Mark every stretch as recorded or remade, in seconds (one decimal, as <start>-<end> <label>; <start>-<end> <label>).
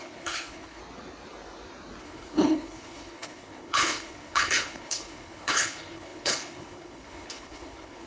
0.0-0.8 remade; 0.8-2.0 recorded; 2.0-8.1 remade